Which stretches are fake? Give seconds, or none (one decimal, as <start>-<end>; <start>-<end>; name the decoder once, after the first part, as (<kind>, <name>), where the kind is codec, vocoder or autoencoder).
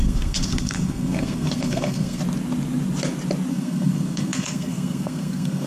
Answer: 0.0-2.2 (codec, SNAC); 3.5-5.7